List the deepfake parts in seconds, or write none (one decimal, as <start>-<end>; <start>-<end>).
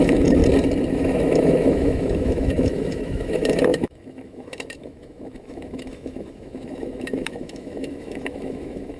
0.0-0.4; 0.9-9.0